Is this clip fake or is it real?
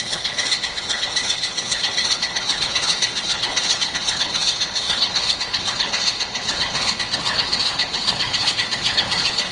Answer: fake